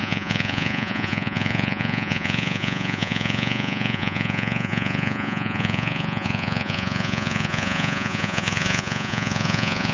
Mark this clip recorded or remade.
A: remade